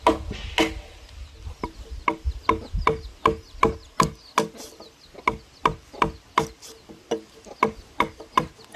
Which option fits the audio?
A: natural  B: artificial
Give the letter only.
A